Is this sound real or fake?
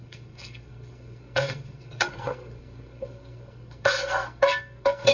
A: fake